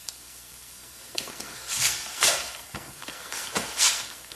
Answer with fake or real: fake